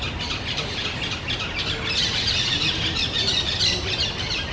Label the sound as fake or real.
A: real